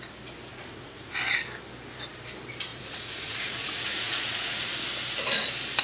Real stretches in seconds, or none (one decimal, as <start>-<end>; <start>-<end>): 0.0-0.5; 1.1-2.7; 4.7-5.8